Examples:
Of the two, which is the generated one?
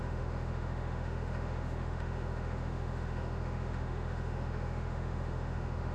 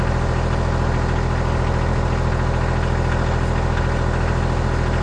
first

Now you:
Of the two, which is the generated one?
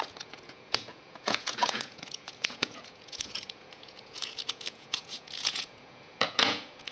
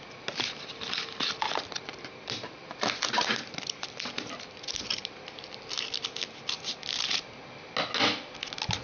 first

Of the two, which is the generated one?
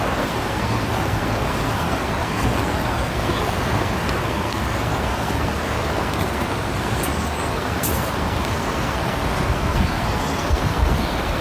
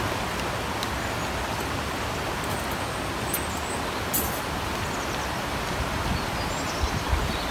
first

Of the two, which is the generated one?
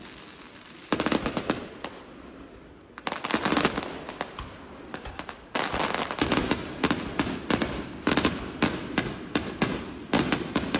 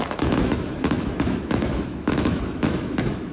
second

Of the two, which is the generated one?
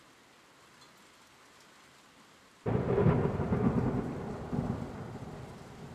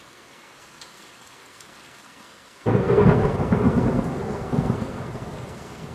second